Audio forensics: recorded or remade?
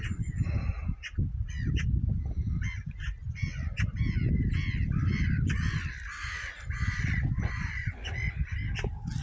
recorded